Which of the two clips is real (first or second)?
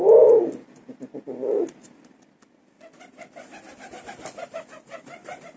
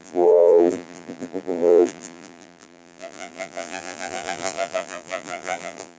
first